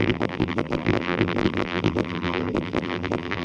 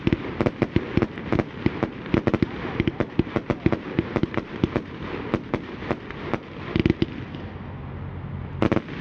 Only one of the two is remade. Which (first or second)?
first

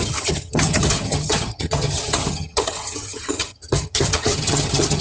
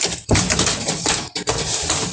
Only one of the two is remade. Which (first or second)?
first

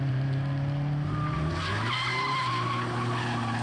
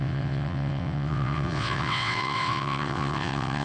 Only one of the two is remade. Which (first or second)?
second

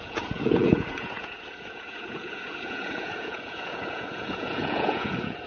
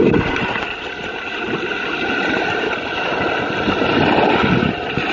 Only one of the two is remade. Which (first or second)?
first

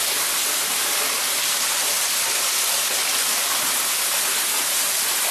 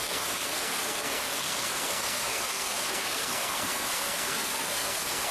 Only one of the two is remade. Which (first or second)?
second